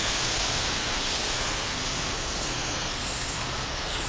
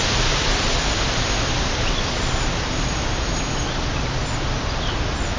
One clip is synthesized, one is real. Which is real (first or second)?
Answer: second